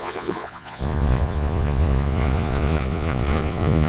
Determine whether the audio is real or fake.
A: fake